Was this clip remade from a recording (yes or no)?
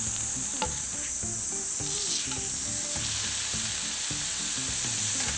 no